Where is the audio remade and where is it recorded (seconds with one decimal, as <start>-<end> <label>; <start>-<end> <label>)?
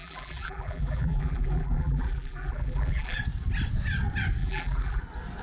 0.0-3.2 remade; 3.2-4.4 recorded; 4.4-5.0 remade; 5.0-5.4 recorded